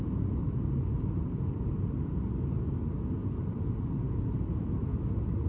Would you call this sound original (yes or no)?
yes